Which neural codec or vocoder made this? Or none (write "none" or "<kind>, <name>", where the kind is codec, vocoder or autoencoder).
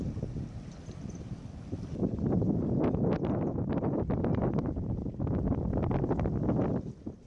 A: none